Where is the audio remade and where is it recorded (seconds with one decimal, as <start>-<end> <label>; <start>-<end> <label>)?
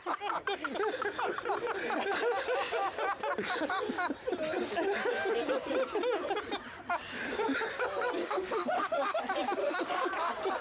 0.0-8.2 recorded; 8.2-9.2 remade; 9.2-9.6 recorded; 9.6-10.1 remade; 10.1-10.6 recorded